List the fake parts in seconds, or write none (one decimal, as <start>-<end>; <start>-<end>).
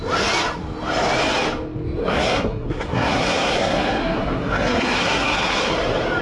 2.0-5.7